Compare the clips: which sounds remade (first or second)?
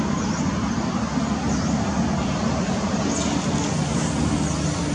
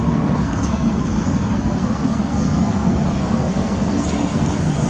second